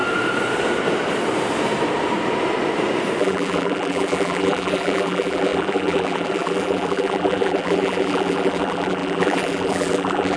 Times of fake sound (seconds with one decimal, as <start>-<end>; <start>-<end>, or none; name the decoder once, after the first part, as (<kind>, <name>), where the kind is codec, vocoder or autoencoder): 3.2-10.4 (vocoder, BigVGAN v2)